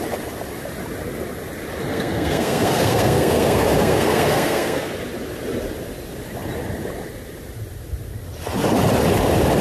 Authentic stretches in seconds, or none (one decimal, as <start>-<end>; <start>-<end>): 0.0-1.9; 4.9-9.6